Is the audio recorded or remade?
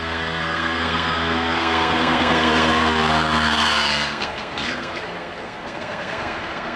remade